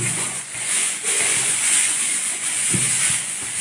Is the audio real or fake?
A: fake